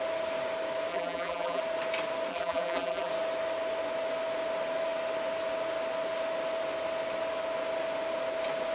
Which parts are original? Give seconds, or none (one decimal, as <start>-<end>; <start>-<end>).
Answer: 0.0-0.9; 1.6-2.3; 3.1-8.7